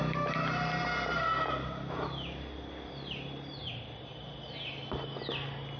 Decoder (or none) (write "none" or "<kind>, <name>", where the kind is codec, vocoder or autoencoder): none